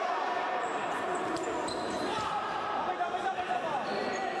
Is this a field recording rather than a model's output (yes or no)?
no